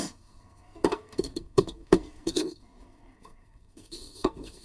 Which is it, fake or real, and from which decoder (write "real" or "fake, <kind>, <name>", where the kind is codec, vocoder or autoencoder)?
fake, codec, SNAC